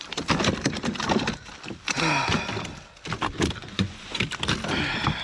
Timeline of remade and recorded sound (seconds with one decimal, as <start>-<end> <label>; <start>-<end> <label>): 0.0-3.6 recorded; 3.6-4.2 remade; 4.2-5.2 recorded